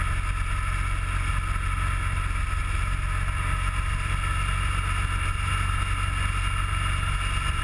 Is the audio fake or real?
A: real